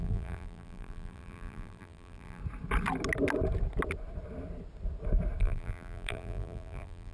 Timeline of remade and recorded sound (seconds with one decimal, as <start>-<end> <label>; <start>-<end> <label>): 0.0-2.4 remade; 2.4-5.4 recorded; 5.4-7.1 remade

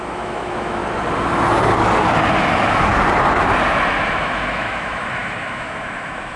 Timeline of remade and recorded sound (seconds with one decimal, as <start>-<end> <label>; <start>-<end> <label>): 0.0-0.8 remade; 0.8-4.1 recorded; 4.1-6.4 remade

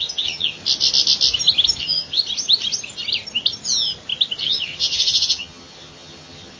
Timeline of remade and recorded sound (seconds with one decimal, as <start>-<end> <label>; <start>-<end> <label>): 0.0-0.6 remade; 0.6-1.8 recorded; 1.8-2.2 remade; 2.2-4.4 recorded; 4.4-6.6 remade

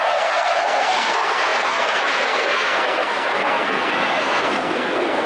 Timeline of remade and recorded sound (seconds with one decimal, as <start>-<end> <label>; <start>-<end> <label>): 0.0-5.3 remade

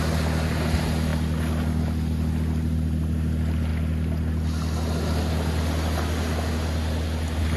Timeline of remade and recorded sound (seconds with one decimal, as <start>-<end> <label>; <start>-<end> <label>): 0.0-7.6 recorded